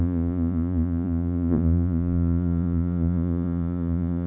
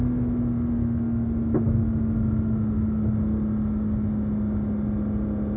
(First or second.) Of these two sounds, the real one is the second